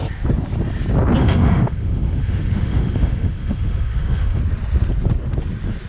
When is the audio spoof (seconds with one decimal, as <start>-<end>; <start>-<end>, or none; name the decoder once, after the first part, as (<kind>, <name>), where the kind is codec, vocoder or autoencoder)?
1.2-4.4 (autoencoder, DAC-VAE)